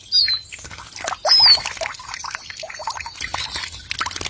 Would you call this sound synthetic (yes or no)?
no